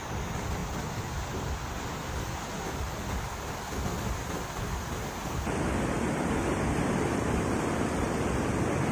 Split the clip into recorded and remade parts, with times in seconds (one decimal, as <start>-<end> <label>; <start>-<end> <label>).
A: 0.0-8.9 recorded